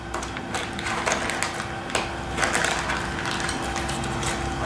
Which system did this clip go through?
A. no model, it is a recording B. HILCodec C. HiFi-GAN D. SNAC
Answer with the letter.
A